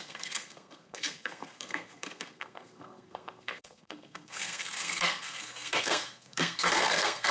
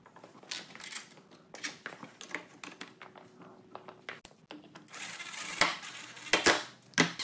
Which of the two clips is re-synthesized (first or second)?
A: first